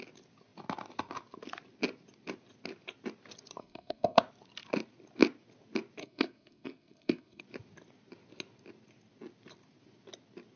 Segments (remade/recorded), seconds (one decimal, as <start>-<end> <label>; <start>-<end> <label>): 0.0-3.6 recorded; 3.6-4.2 remade; 4.2-6.0 recorded; 6.0-7.4 remade; 7.4-10.6 recorded